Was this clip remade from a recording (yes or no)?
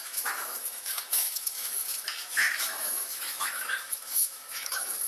yes